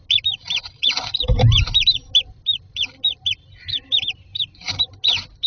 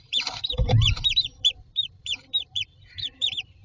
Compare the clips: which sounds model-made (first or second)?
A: second